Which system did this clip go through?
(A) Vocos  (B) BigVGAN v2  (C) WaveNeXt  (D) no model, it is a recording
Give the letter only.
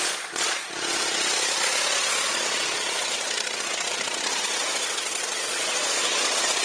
A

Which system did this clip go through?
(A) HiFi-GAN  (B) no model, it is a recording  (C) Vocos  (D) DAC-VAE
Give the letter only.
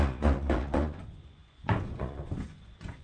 C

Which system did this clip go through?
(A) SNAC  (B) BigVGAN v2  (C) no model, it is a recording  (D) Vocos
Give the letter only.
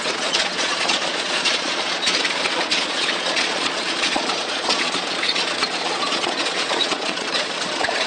D